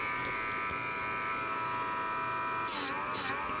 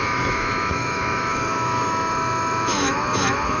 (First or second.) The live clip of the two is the first